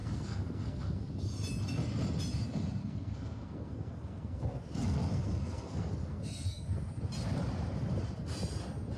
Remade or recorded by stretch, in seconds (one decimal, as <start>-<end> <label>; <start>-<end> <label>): 0.0-1.1 remade; 1.1-2.8 recorded; 2.8-6.9 remade; 6.9-9.0 recorded